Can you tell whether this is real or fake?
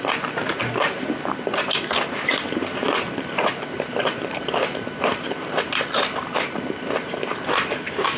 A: fake